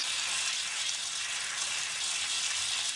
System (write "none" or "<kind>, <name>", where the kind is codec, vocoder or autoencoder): none